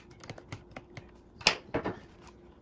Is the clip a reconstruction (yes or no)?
no